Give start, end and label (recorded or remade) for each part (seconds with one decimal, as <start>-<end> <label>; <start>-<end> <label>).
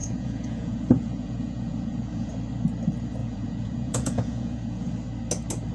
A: 0.0-2.3 remade; 2.3-3.2 recorded; 3.2-4.9 remade; 4.9-5.7 recorded